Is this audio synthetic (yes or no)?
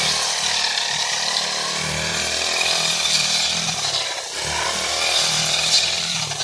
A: yes